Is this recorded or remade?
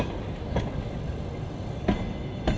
recorded